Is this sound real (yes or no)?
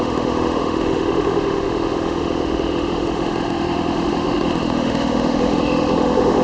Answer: no